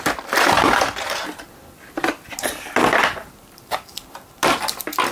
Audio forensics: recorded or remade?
recorded